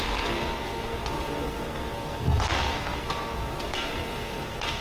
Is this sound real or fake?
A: fake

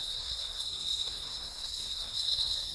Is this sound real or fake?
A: fake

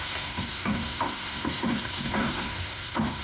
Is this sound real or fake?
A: fake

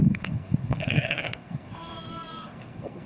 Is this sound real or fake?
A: fake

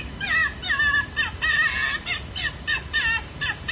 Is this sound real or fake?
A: real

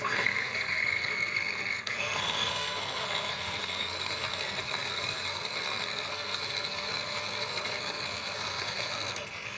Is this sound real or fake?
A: fake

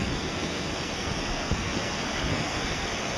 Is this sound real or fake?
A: fake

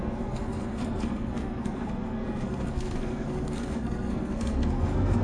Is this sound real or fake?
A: fake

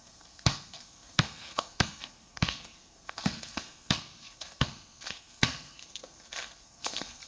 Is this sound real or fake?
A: fake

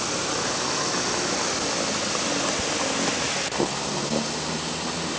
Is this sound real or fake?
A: real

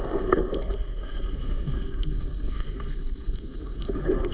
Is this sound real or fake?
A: fake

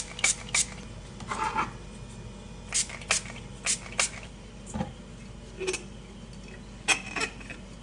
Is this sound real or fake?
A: real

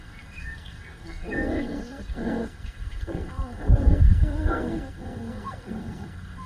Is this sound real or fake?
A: fake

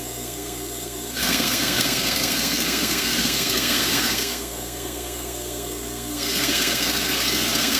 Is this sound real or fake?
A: fake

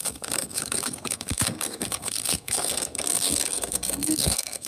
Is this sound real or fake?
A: fake